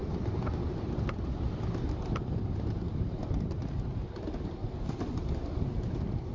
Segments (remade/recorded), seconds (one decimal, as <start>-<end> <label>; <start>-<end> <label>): 0.0-3.2 remade; 3.2-4.6 recorded; 4.6-6.3 remade

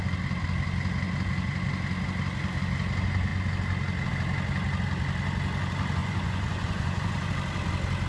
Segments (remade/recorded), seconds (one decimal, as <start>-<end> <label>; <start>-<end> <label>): 0.0-6.0 recorded; 6.0-7.3 remade; 7.3-8.1 recorded